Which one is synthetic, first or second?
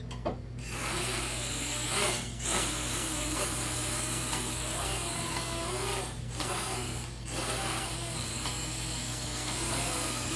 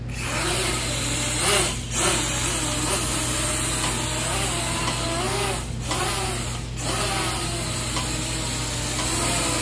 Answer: first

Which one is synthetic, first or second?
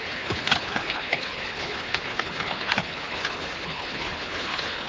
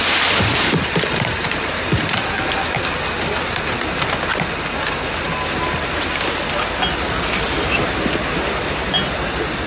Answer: first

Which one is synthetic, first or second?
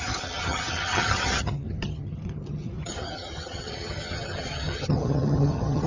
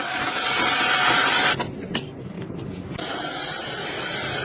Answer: first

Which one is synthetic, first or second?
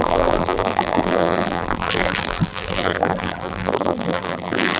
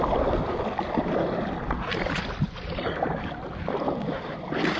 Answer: first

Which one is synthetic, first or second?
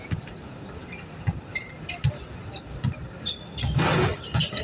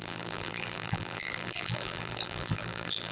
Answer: second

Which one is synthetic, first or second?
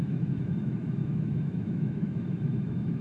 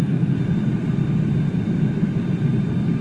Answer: first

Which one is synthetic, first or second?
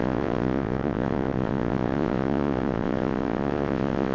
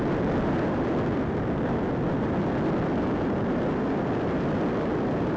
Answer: first